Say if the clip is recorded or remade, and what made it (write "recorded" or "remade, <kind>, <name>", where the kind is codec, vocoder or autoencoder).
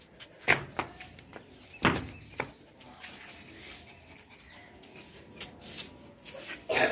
recorded